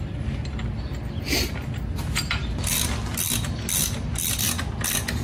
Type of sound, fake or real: real